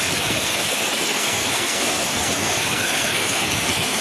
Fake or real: fake